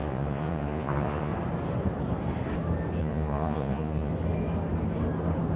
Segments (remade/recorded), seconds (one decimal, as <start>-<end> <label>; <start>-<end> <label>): 0.0-1.3 remade; 1.3-3.0 recorded; 3.0-4.1 remade; 4.1-5.6 recorded